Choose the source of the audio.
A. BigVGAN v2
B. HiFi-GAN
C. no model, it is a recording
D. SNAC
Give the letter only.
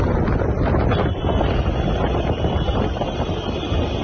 A